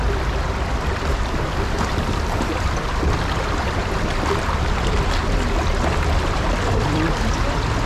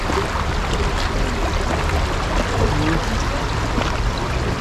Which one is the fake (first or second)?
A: first